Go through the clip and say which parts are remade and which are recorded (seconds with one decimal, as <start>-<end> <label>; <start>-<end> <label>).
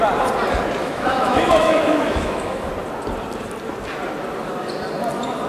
0.0-0.8 recorded; 0.8-2.7 remade; 2.7-5.5 recorded